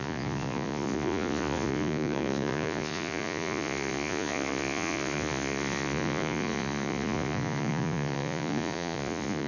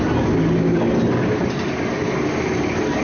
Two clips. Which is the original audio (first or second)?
second